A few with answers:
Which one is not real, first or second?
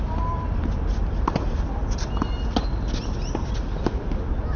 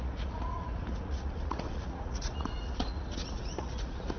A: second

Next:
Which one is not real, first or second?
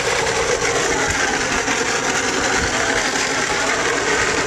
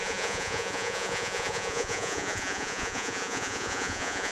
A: second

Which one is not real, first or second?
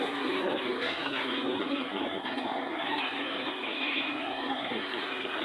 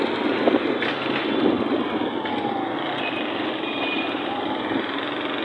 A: first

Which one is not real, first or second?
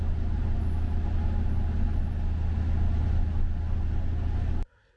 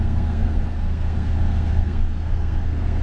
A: second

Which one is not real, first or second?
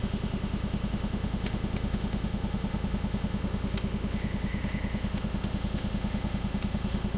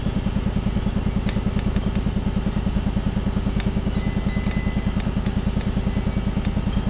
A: first